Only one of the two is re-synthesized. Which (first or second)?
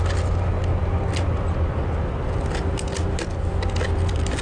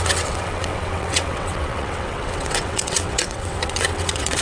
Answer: second